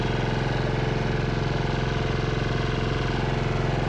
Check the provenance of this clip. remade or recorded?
recorded